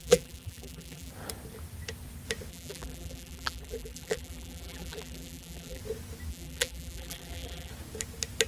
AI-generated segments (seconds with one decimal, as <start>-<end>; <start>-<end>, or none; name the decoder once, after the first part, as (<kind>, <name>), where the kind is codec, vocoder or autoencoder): 0.0-1.1 (vocoder, BigVGAN v2); 2.5-5.8; 6.3-7.7